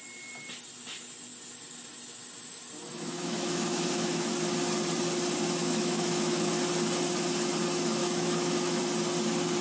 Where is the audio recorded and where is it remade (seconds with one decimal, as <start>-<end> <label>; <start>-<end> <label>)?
0.0-2.9 recorded; 2.9-4.3 remade; 4.3-5.6 recorded; 5.6-6.5 remade; 6.5-8.0 recorded; 8.0-8.8 remade; 8.8-9.6 recorded